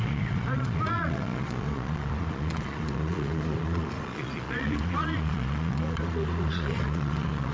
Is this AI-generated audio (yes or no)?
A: yes